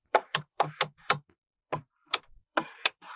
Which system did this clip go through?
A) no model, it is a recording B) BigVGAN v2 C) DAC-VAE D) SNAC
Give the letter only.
B